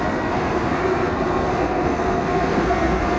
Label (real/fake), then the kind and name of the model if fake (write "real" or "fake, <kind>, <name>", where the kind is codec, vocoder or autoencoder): fake, codec, SNAC